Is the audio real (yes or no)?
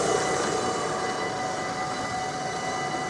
yes